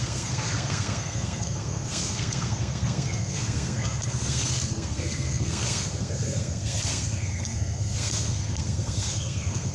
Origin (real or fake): fake